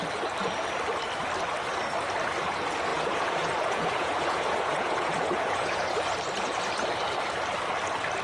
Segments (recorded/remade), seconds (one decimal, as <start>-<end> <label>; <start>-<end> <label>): 0.0-2.9 recorded; 2.9-5.9 remade; 5.9-8.2 recorded